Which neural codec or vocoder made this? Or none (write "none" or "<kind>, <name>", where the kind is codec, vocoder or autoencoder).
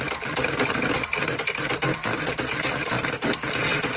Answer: none